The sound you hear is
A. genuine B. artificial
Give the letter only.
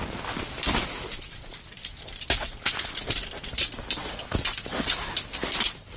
A